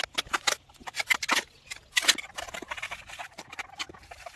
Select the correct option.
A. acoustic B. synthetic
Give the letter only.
A